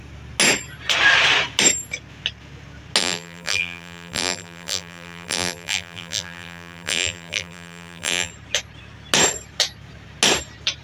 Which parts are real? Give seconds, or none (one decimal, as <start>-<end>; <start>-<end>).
0.0-3.0; 8.3-10.8

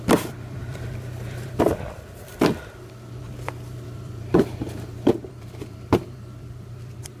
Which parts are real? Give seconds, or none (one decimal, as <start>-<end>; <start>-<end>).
none